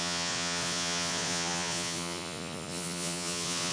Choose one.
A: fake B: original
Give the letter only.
A